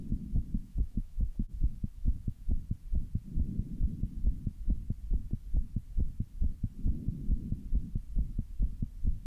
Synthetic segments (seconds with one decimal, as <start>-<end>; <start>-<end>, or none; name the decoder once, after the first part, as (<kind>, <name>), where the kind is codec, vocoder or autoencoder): 0.6-2.5 (autoencoder, DAC-VAE)